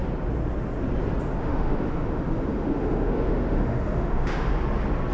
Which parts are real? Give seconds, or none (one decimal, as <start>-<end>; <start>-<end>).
0.0-1.4; 4.5-5.1